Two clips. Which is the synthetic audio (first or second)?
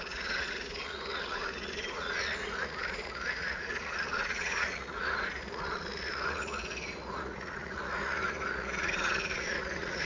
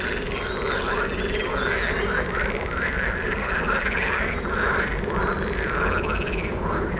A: first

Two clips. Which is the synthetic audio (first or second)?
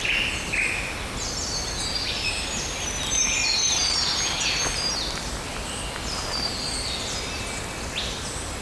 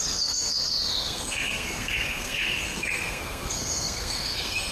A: second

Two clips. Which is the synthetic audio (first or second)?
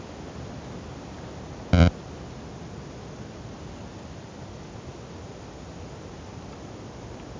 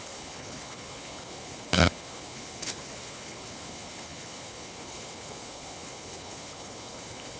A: second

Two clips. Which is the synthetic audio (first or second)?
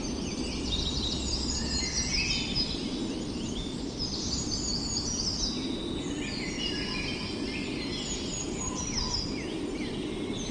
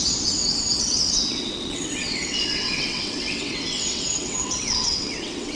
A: second